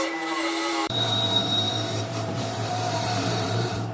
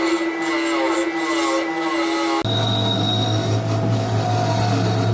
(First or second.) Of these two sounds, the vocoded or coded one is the first